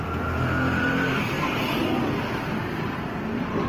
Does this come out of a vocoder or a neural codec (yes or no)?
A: no